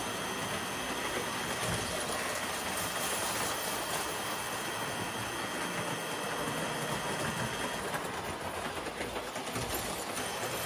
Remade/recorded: recorded